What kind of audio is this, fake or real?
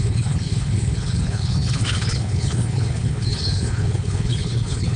fake